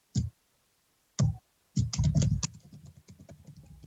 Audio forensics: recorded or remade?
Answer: recorded